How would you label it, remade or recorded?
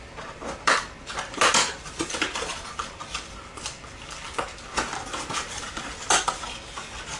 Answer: remade